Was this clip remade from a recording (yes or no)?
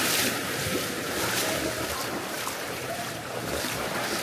yes